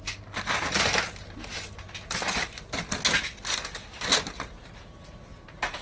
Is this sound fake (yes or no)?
no